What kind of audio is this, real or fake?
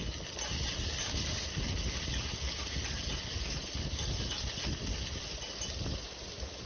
real